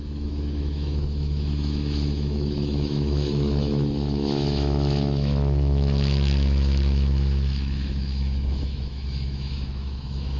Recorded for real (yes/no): no